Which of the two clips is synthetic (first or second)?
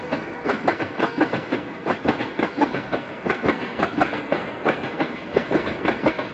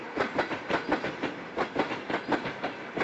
first